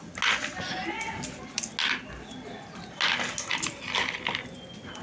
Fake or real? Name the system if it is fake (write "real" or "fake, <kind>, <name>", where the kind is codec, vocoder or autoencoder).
real